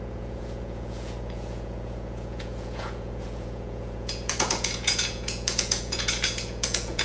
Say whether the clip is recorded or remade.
remade